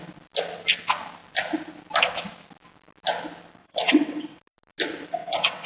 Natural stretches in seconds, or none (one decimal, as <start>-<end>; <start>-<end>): 0.0-3.6; 4.4-5.2